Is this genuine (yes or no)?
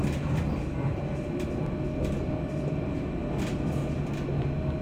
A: yes